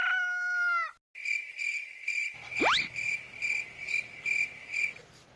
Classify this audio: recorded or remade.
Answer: recorded